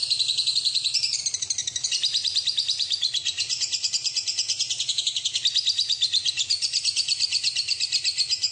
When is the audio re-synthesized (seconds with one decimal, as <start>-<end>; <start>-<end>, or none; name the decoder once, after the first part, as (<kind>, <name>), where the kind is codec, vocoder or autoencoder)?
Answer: 0.0-1.2 (vocoder, BigVGAN v2); 1.6-3.9